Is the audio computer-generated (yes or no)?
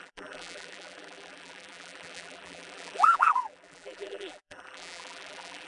yes